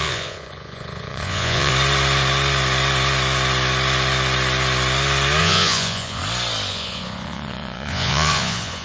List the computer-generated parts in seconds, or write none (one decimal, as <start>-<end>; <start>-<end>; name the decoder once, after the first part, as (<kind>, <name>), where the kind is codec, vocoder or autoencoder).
0.0-1.7 (vocoder, Vocos); 5.4-6.2; 6.7-8.8